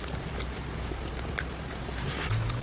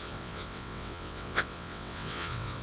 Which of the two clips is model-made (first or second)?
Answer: second